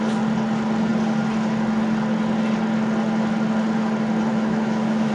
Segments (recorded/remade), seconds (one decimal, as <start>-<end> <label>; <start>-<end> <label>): 0.0-4.3 recorded; 4.3-5.1 remade